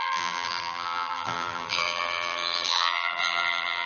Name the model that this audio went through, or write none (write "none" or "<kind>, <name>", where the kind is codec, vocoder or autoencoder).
vocoder, BigVGAN v2